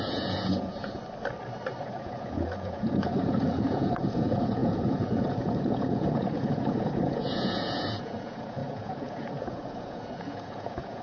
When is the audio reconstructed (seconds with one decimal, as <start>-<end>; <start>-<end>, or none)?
0.0-1.0; 1.8-11.0